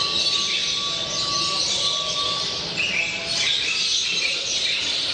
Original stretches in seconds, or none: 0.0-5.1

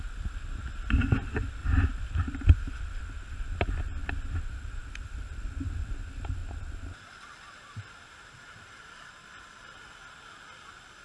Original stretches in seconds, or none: 0.0-1.6; 3.0-4.8; 5.9-11.0